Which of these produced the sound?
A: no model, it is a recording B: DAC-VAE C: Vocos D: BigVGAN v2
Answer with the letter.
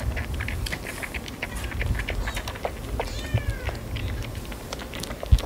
A